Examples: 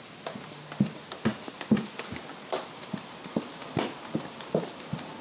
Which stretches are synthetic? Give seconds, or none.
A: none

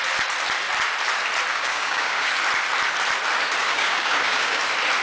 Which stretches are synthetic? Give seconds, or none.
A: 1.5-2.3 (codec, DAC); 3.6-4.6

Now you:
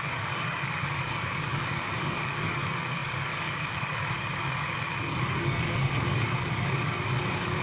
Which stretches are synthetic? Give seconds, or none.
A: 0.0-7.6 (codec, DAC)

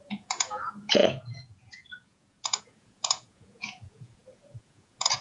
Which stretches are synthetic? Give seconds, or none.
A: 0.0-5.2 (vocoder, Vocos)

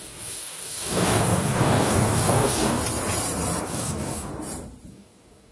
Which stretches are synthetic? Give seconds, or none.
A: 0.0-2.8 (codec, DAC); 3.6-4.3; 4.9-5.5